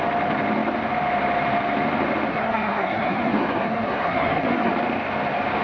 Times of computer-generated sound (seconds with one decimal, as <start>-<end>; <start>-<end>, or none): 2.3-4.7